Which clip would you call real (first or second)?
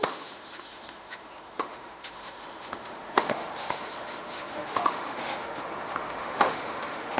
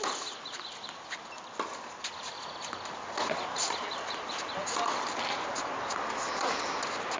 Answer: second